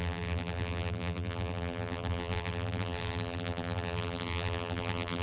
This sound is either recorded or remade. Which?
remade